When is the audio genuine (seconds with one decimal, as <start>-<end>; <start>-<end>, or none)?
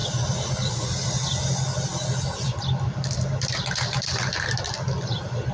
0.0-5.5